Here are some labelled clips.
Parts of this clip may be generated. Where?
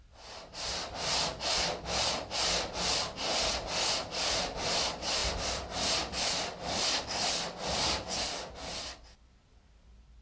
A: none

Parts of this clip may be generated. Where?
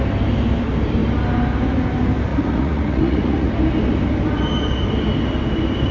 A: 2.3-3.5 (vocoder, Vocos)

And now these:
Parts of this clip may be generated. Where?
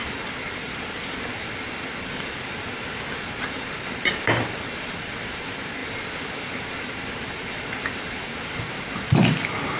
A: none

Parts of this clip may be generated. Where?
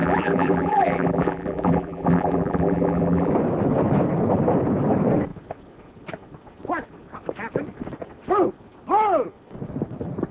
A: 0.0-3.3 (vocoder, BigVGAN v2)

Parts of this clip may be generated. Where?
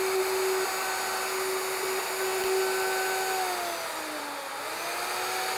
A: none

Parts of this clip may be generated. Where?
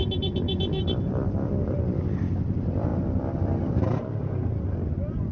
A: 0.0-2.0 (vocoder, BigVGAN v2); 2.9-4.0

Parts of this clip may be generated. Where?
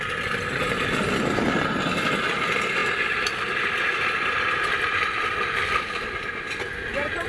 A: none